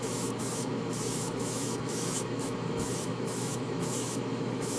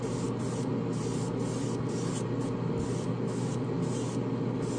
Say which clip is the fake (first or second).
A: first